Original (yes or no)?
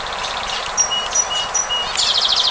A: yes